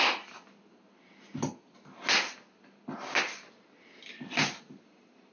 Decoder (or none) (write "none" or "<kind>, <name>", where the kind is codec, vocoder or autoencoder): none